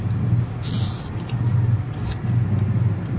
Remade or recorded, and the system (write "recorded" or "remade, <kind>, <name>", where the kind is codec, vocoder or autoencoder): remade, vocoder, BigVGAN v2